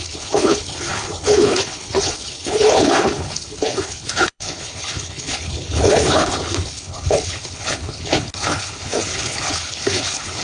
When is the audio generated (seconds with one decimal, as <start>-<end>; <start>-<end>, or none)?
0.0-10.4